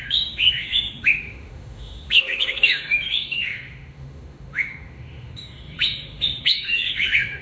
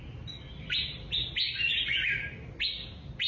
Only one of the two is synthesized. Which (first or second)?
first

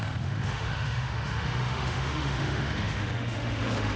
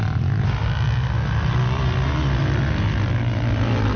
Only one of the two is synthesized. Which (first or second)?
first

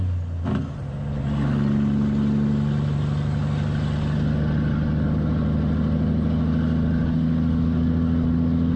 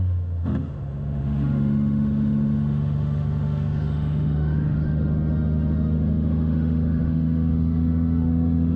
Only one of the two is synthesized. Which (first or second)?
second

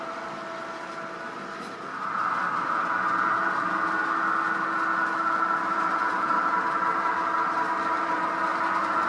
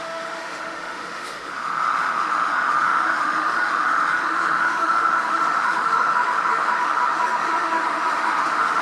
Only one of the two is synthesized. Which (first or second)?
second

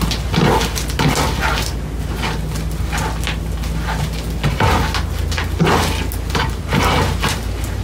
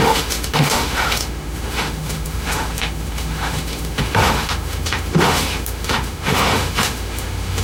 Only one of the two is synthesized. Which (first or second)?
second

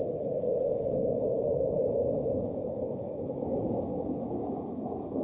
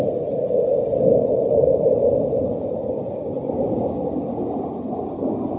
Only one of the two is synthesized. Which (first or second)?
first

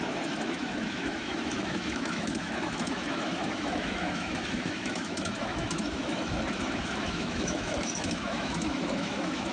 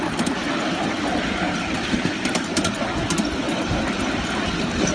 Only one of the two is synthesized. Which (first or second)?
first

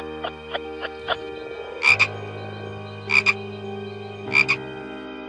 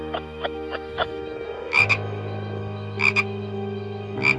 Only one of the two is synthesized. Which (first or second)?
second